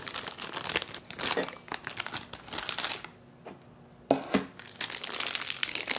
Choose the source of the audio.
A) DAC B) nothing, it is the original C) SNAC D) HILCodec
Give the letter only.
B